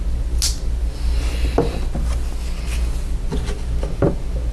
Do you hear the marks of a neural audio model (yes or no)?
no